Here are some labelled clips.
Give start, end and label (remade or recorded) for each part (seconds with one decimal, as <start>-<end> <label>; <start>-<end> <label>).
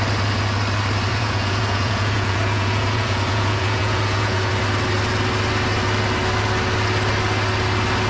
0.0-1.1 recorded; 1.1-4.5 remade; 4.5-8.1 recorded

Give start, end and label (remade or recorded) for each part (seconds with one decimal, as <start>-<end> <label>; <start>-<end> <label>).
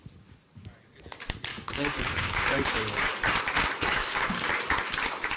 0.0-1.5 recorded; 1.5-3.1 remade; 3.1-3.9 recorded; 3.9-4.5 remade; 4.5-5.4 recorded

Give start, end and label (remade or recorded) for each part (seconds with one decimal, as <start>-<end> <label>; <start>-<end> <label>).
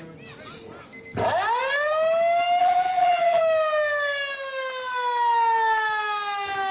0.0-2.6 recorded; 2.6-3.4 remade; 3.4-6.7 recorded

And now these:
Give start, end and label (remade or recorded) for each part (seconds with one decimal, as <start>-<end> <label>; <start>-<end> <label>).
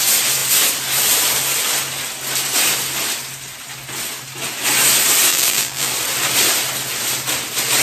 0.0-5.3 recorded; 5.3-5.9 remade; 5.9-7.8 recorded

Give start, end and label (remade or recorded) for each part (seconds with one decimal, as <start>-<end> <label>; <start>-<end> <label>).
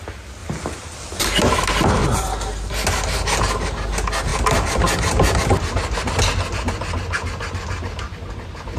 0.0-0.4 recorded; 0.4-1.2 remade; 1.2-2.0 recorded; 2.0-2.7 remade; 2.7-4.3 recorded; 4.3-5.4 remade; 5.4-8.8 recorded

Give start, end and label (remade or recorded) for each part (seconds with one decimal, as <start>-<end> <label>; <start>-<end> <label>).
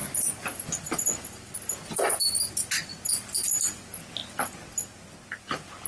0.0-5.9 recorded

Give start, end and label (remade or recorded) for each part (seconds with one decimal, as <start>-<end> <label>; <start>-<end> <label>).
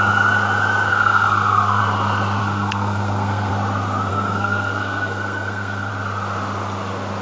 0.0-0.9 recorded; 0.9-1.8 remade; 1.8-2.4 recorded; 2.4-3.5 remade; 3.5-4.1 recorded; 4.1-5.9 remade; 5.9-7.2 recorded